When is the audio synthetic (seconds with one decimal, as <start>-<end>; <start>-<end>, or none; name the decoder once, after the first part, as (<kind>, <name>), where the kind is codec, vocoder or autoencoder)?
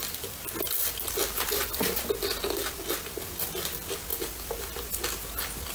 4.1-4.9 (vocoder, BigVGAN v2)